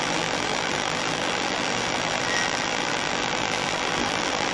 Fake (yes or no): yes